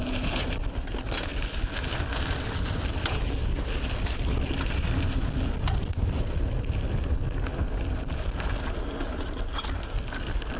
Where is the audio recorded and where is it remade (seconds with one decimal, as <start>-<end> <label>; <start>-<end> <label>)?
0.0-10.6 recorded